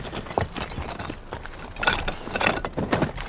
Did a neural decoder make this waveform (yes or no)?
no